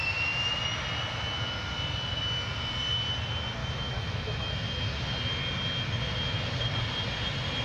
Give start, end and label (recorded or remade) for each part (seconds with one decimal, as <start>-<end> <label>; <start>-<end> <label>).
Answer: 0.0-3.6 recorded; 3.6-4.5 remade; 4.5-7.6 recorded